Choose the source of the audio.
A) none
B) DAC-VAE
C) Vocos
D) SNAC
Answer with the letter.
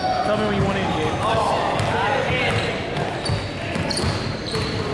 A